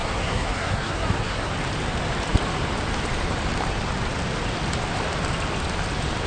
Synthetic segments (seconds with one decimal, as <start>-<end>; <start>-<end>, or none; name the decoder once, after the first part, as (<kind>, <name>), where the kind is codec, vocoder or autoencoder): 0.0-1.5 (codec, SNAC)